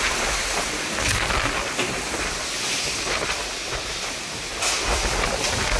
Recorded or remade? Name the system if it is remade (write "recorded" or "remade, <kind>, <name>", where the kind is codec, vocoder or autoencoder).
recorded